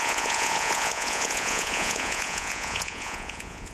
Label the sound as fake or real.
fake